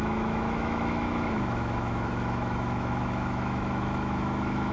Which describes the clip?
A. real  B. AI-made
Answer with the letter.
B